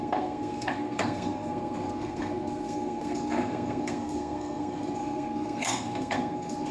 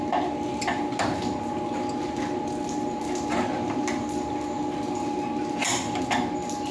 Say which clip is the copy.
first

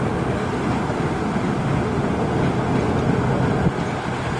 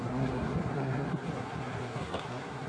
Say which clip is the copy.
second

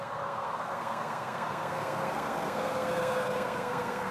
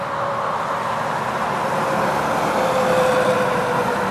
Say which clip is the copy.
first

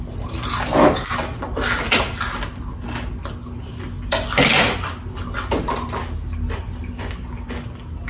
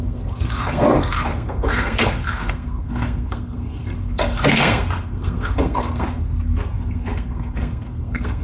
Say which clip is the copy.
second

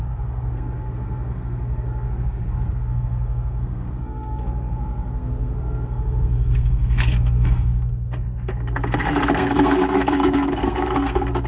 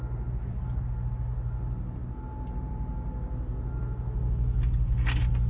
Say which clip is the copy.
first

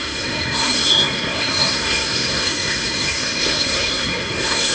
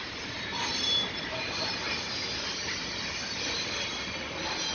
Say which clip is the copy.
first